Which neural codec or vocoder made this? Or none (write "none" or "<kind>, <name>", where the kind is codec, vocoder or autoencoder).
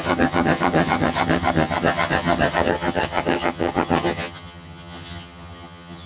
vocoder, HiFi-GAN